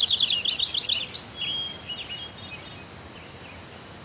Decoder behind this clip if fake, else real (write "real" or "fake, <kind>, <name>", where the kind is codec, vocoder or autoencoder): real